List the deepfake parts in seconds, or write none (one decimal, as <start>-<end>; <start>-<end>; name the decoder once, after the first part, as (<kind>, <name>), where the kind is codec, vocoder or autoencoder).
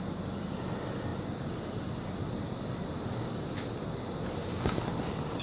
none